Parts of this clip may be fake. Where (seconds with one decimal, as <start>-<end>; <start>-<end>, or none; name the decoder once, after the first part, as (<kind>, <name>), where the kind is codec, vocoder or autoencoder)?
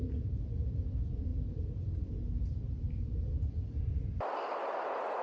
none